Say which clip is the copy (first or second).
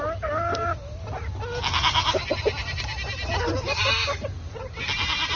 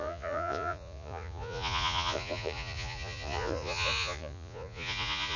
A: second